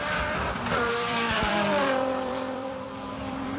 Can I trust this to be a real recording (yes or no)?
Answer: no